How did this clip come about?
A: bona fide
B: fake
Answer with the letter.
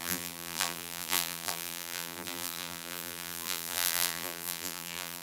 B